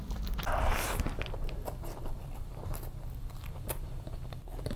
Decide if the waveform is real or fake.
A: fake